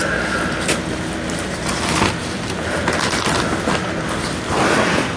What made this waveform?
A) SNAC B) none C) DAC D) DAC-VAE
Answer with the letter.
B